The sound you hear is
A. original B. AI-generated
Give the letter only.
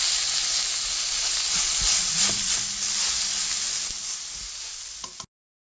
A